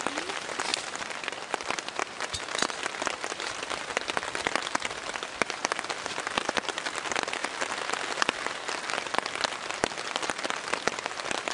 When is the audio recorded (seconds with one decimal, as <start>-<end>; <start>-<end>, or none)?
5.6-6.1; 7.4-9.5